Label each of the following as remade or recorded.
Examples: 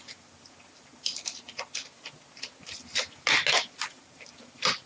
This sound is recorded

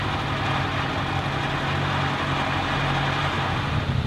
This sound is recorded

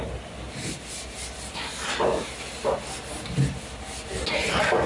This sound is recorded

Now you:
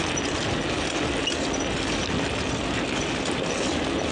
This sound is recorded